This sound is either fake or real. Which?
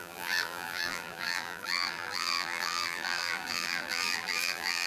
fake